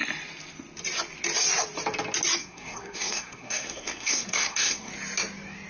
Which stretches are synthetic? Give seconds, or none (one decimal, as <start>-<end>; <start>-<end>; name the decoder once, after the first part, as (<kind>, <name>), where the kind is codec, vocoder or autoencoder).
2.4-4.9 (codec, SNAC)